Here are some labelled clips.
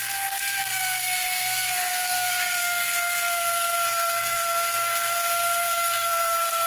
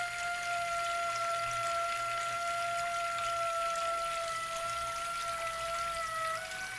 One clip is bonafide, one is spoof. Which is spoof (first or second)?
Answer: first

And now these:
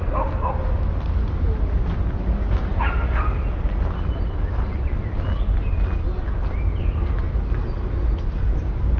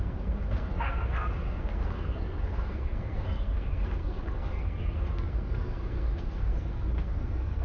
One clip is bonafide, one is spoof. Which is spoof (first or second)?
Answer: second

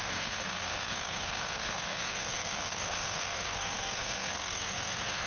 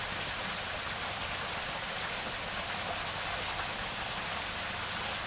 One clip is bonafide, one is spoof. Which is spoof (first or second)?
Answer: first